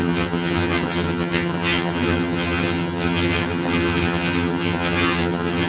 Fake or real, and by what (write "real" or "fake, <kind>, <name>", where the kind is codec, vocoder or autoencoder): fake, vocoder, HiFi-GAN